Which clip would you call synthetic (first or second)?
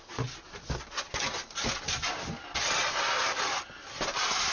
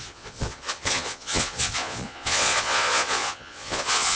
second